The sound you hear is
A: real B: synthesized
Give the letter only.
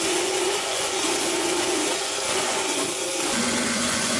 B